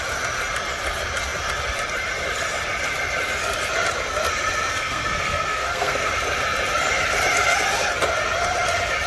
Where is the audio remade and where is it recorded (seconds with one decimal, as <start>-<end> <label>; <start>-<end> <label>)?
0.0-4.7 recorded; 4.7-6.1 remade; 6.1-9.1 recorded